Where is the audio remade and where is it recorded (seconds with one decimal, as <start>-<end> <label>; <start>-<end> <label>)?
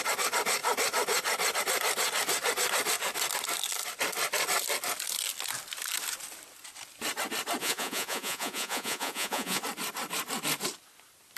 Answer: 0.0-7.6 recorded; 7.6-9.6 remade; 9.6-11.4 recorded